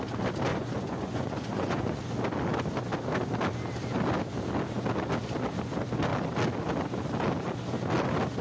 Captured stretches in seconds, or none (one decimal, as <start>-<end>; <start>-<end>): 0.0-0.5; 2.0-8.4